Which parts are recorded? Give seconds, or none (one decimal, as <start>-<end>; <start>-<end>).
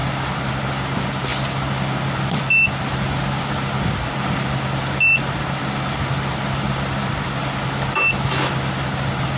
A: 0.0-9.4